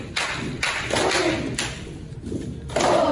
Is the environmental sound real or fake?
real